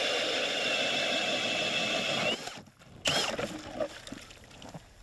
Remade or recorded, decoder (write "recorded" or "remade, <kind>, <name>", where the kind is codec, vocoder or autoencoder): recorded